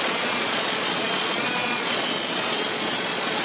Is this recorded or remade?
remade